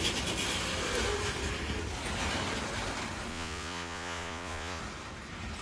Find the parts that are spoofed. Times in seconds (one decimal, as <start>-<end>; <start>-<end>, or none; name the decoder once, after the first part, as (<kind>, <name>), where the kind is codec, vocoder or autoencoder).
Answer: 3.3-4.8 (vocoder, Vocos)

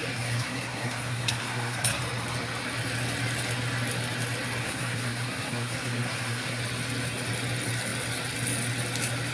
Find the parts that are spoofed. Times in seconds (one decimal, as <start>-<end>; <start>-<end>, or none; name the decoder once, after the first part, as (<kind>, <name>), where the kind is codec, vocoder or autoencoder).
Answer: 0.0-2.0 (codec, SNAC); 4.6-6.6

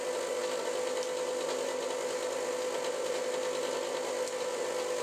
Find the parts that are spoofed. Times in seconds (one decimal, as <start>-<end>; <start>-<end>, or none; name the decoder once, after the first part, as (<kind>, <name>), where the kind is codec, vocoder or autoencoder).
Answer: none

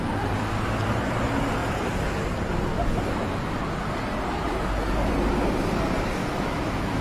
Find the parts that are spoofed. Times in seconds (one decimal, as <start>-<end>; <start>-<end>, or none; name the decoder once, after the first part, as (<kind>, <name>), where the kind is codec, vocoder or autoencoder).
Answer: 6.2-7.0 (autoencoder, DAC-VAE)

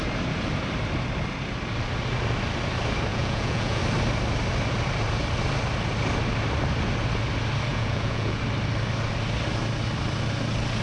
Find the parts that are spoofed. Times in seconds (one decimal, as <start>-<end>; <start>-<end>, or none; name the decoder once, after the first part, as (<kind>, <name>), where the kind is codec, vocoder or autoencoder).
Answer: 3.1-3.8 (vocoder, Vocos); 7.7-8.4

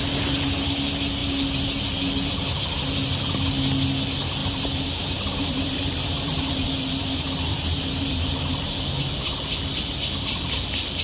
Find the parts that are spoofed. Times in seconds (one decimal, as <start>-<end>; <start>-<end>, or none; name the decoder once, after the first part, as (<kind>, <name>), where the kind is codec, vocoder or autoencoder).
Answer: 4.4-8.8 (vocoder, BigVGAN v2)